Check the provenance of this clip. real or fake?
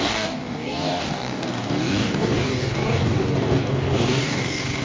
fake